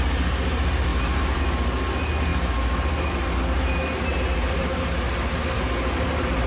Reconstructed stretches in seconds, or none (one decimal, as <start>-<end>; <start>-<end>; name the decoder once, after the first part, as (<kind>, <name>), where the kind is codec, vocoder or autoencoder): 0.9-1.4 (vocoder, BigVGAN v2); 4.1-4.9